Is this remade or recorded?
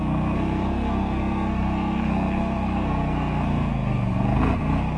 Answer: remade